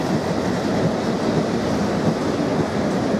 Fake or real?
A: real